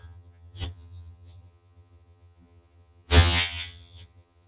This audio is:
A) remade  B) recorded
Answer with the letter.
A